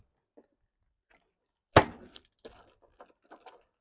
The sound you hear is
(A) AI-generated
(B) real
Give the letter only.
B